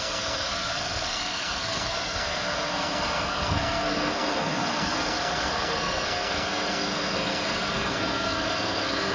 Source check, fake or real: fake